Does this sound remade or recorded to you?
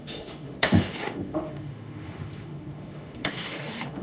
remade